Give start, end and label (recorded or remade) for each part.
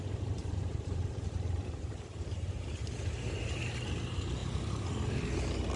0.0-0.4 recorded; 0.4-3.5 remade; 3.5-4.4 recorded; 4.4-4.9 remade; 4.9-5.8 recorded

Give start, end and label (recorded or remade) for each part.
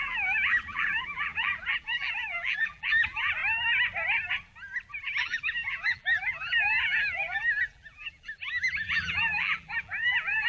0.0-3.4 remade; 3.4-4.9 recorded; 4.9-10.5 remade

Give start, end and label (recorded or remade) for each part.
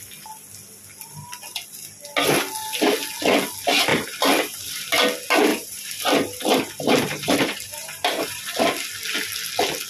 0.0-3.9 recorded; 3.9-5.0 remade; 5.0-5.5 recorded; 5.5-8.4 remade; 8.4-9.9 recorded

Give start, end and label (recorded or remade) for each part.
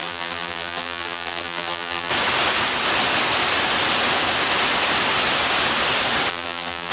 0.0-2.1 remade; 2.1-6.3 recorded; 6.3-6.9 remade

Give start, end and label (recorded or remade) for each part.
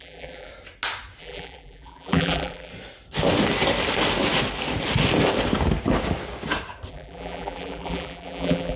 0.0-0.5 remade; 0.5-1.2 recorded; 1.2-2.7 remade; 2.7-6.9 recorded; 6.9-8.8 remade